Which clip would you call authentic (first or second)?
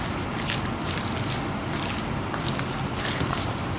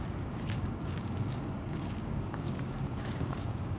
first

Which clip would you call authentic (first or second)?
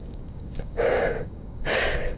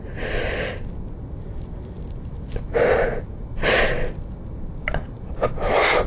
second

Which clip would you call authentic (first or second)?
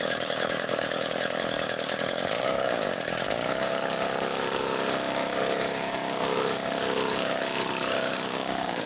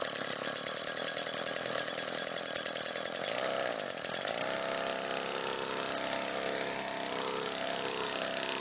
second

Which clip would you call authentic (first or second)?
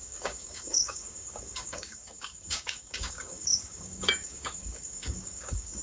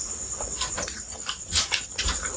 second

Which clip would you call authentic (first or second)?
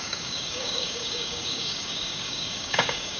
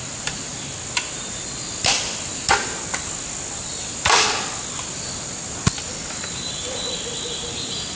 second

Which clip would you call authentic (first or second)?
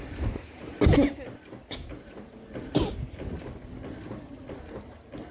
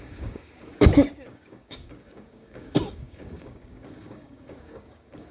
first